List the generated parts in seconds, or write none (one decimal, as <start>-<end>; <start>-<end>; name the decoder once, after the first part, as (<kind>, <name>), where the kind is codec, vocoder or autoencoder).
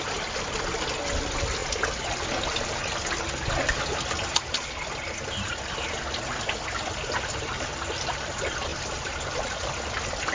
8.7-10.3 (vocoder, BigVGAN v2)